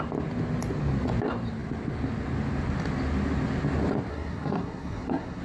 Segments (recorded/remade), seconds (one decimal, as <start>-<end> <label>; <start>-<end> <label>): 0.0-4.1 recorded; 4.1-5.4 remade